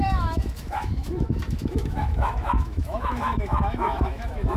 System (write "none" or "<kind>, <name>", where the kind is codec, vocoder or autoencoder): autoencoder, DAC-VAE